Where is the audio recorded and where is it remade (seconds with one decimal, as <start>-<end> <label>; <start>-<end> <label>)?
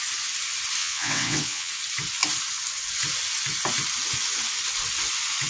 0.0-0.8 recorded; 0.8-1.7 remade; 1.7-5.5 recorded